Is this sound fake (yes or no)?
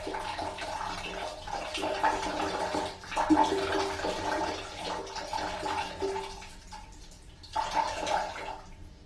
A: no